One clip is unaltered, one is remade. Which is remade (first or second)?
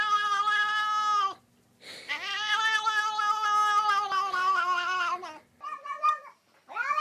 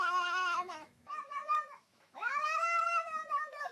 second